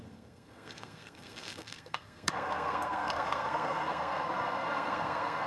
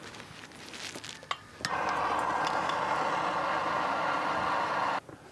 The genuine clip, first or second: second